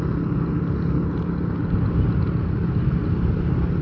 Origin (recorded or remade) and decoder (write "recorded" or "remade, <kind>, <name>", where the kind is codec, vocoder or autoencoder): recorded